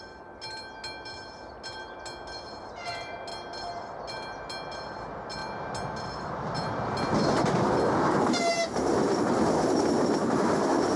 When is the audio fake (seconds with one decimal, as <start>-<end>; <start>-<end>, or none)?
none

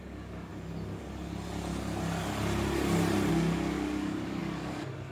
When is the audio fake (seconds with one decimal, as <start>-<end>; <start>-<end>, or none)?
0.0-0.5; 3.3-5.1

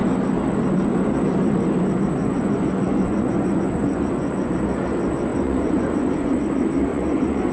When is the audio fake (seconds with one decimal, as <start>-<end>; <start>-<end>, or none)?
2.2-4.5; 5.3-6.3; 6.9-7.5